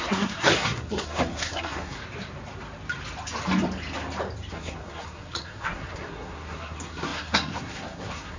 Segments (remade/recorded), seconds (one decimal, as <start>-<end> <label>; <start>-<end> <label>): 0.0-2.0 remade; 2.0-4.5 recorded; 4.5-8.4 remade